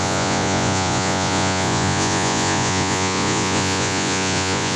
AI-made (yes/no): yes